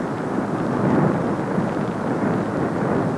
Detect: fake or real real